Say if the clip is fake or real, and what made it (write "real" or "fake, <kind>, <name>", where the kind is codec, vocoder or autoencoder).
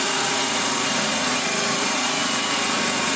fake, vocoder, Vocos